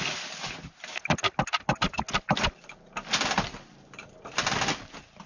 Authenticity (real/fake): real